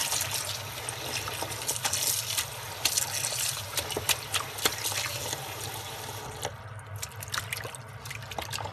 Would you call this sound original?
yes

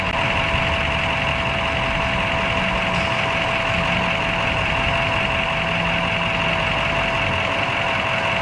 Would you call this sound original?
yes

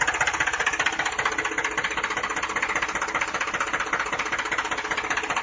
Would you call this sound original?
yes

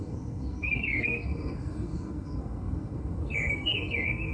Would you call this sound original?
no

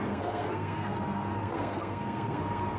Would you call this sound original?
no